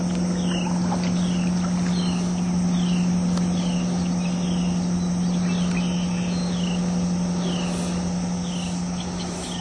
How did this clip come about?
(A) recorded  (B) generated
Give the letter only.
A